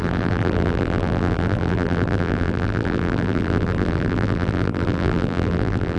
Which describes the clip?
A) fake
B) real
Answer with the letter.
A